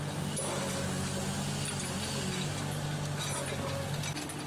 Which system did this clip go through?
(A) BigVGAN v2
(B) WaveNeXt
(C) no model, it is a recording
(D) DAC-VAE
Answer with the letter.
C